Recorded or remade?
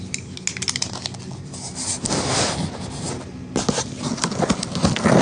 recorded